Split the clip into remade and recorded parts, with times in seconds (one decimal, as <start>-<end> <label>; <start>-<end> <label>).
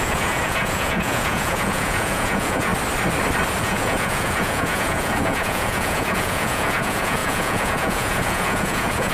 0.0-2.7 remade; 2.7-3.6 recorded; 3.6-9.1 remade